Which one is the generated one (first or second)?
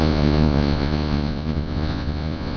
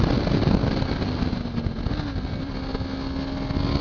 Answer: first